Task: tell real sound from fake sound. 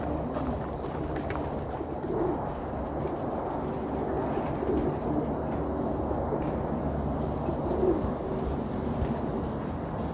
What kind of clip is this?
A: real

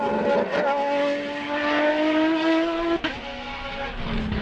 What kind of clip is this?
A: real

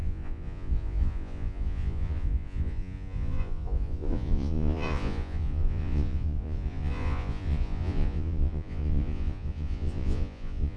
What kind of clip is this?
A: fake